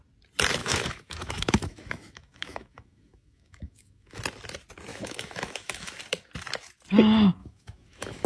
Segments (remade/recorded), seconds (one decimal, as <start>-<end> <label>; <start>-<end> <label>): 0.0-0.6 recorded; 0.6-4.2 remade; 4.2-4.9 recorded; 4.9-5.9 remade; 5.9-7.4 recorded; 7.4-8.3 remade